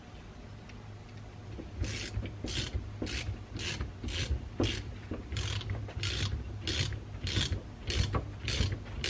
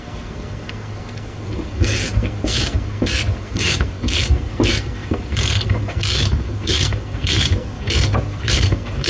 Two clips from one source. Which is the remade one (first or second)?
second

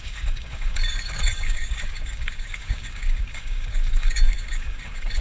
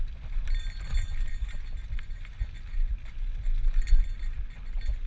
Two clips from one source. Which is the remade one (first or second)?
first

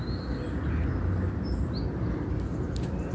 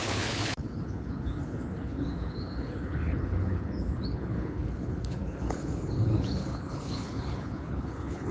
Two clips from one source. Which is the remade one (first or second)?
second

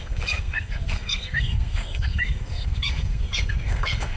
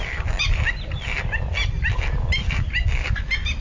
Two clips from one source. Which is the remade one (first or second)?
first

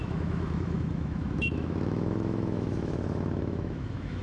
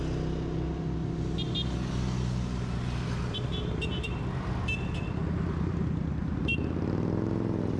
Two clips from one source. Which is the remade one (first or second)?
first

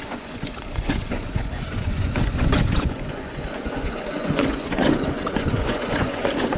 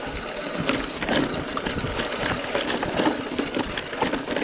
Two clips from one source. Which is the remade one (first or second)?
first